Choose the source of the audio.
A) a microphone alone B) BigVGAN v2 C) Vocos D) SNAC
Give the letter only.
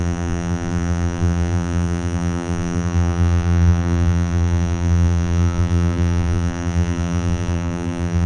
B